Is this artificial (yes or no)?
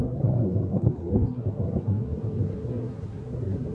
yes